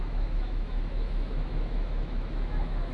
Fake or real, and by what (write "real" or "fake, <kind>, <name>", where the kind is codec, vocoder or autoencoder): fake, autoencoder, DAC-VAE